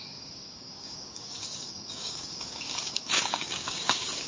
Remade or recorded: remade